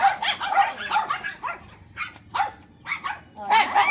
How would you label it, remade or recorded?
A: recorded